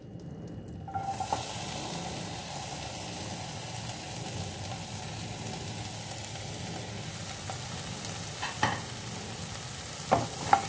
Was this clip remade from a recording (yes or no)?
no